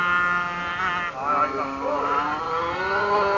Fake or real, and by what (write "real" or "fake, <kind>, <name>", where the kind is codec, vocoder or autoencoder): real